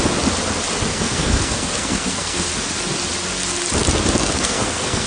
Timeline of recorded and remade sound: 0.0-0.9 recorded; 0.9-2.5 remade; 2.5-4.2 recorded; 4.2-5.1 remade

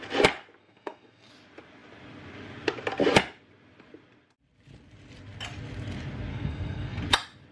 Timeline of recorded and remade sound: 0.0-0.6 recorded; 0.6-1.3 remade; 1.3-6.3 recorded; 6.3-7.0 remade; 7.0-7.5 recorded

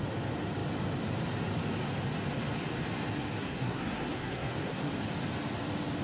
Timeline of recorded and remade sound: 0.0-3.3 recorded; 3.3-4.9 remade; 4.9-6.0 recorded

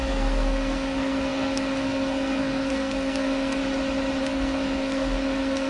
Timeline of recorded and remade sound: 0.0-3.6 remade; 3.6-4.2 recorded; 4.2-5.7 remade

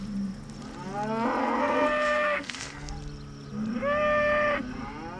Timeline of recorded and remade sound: 0.0-1.4 recorded; 1.4-2.9 remade; 2.9-5.2 recorded

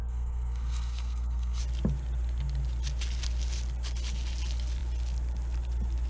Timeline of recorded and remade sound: 0.0-1.6 remade; 1.6-6.1 recorded